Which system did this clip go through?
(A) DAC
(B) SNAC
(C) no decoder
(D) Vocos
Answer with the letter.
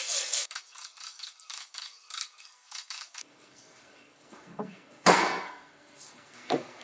B